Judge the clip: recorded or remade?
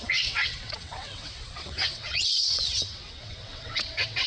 remade